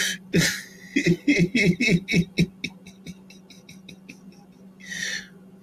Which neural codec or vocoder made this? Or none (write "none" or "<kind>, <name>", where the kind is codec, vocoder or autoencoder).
none